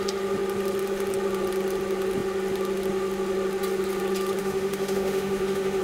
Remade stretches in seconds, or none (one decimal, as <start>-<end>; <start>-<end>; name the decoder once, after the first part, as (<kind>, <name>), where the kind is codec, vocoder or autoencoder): 4.4-5.8 (autoencoder, DAC-VAE)